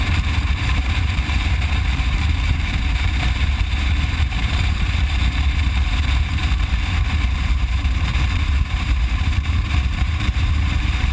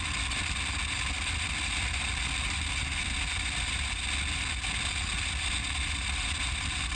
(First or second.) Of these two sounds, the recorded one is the second